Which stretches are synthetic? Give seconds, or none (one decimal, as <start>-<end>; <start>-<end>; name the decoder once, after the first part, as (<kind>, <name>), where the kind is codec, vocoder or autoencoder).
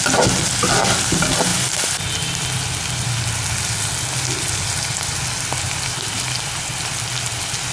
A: none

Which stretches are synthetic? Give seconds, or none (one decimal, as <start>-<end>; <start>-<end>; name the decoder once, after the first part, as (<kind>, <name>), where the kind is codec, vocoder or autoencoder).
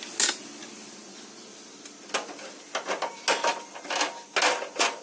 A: none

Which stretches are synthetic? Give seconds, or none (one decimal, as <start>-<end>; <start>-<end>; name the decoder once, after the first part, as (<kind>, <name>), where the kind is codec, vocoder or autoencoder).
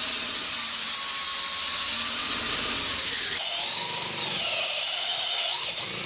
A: 0.0-1.3 (vocoder, BigVGAN v2); 1.9-5.1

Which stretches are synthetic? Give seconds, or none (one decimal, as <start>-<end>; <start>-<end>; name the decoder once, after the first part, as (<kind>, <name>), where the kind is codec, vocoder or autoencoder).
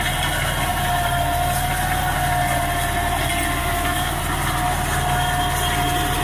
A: 3.6-4.2 (autoencoder, DAC-VAE)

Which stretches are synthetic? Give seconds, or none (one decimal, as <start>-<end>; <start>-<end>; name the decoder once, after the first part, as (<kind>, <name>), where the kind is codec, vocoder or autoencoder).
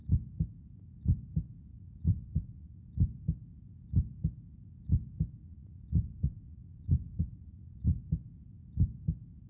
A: 1.7-2.8 (vocoder, Vocos); 5.4-8.0